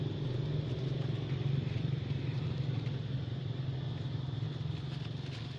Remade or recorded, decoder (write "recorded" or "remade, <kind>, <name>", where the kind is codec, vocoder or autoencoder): recorded